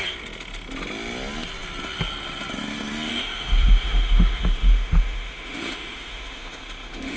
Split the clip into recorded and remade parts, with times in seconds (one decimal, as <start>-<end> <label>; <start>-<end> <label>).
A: 0.0-3.1 recorded; 3.1-7.2 remade